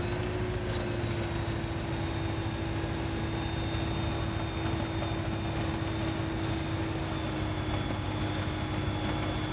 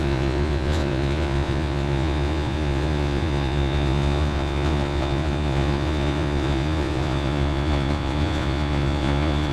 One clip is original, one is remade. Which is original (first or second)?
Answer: first